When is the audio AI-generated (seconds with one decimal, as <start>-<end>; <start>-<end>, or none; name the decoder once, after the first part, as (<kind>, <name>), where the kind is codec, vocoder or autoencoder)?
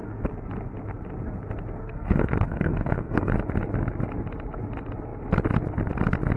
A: 1.8-3.3 (codec, SNAC)